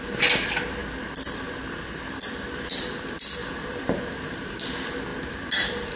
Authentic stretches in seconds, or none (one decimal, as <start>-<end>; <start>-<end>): 0.0-3.4; 4.6-5.1